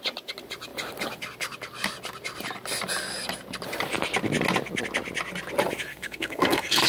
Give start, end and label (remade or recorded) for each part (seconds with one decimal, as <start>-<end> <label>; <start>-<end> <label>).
0.0-5.9 recorded; 5.9-6.9 remade